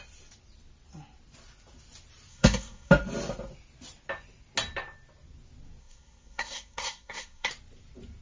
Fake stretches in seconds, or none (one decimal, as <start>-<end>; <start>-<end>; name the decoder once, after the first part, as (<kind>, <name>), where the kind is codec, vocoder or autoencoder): 2.3-2.9 (codec, SNAC); 5.8-7.5